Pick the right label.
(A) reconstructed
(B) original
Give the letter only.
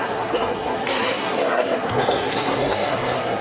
A